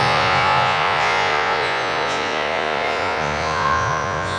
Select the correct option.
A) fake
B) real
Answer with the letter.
A